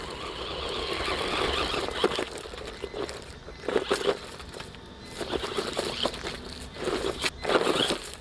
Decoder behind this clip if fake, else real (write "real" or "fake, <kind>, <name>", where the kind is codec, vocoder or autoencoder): real